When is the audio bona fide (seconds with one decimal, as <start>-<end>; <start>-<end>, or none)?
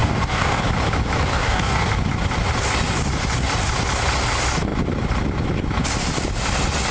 0.6-1.3; 1.9-6.9